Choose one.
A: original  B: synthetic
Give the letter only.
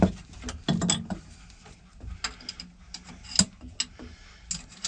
A